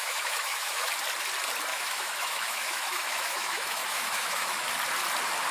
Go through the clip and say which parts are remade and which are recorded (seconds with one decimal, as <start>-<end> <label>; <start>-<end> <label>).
0.0-0.9 remade; 0.9-1.7 recorded; 1.7-4.7 remade; 4.7-5.5 recorded